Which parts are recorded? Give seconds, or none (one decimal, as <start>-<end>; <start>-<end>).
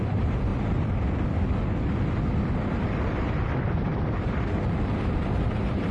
0.5-2.6